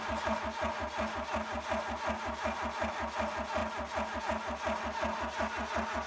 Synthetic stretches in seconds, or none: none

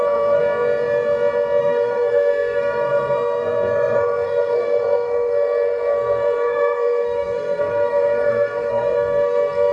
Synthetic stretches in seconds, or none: 0.0-0.4 (codec, SNAC); 1.6-9.7

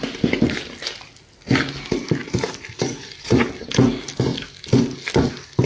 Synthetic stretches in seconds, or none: none

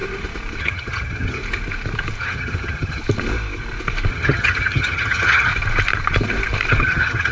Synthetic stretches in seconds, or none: 0.6-1.4 (vocoder, HiFi-GAN); 2.2-3.0; 4.1-5.5; 6.7-7.3

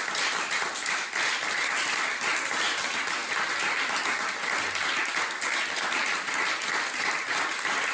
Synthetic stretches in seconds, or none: none

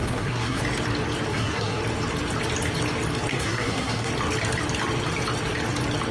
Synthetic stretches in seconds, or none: 0.0-0.6 (codec, SNAC); 1.3-1.8; 3.3-4.1

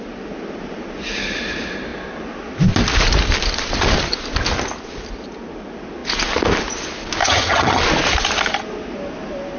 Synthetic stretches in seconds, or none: 7.2-7.8 (vocoder, HiFi-GAN)

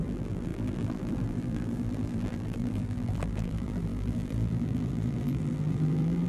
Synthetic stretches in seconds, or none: 0.0-6.3 (vocoder, BigVGAN v2)